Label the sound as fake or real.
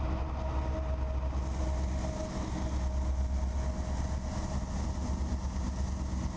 real